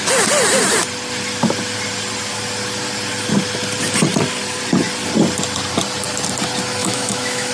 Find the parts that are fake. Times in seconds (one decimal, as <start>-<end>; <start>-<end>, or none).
6.8-7.5